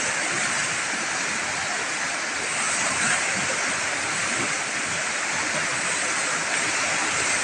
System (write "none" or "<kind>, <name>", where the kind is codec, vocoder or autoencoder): none